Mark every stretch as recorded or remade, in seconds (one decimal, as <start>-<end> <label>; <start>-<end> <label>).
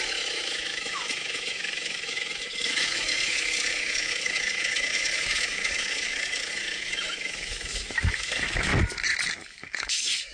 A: 0.0-8.7 remade; 8.7-9.3 recorded; 9.3-10.3 remade